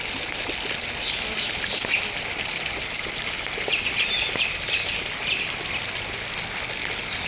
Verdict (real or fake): real